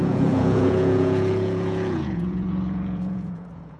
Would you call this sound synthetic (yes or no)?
yes